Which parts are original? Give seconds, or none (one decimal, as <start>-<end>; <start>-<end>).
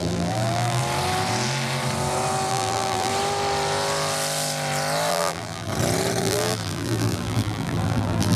0.8-2.5; 3.1-5.1; 5.7-6.2